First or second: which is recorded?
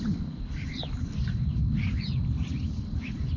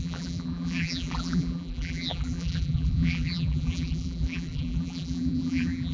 first